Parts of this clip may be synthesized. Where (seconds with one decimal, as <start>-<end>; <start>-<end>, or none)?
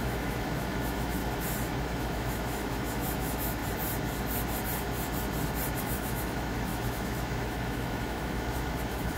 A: 0.0-1.2; 1.8-3.6; 5.8-9.2